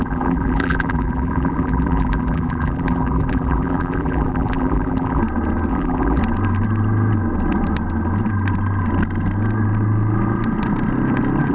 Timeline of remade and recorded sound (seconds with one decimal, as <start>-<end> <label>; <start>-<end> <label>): 0.0-5.2 remade; 5.2-5.7 recorded; 5.7-6.2 remade; 6.2-11.5 recorded